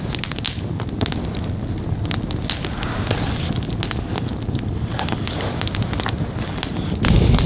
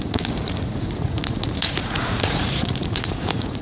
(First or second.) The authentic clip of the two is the first